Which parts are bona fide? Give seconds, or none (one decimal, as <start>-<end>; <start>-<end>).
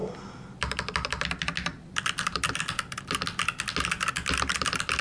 0.0-5.0